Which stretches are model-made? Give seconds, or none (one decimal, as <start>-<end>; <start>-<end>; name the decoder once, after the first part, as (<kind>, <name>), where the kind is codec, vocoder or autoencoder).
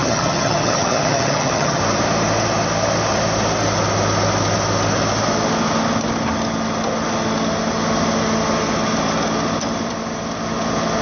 0.0-1.8 (vocoder, HiFi-GAN)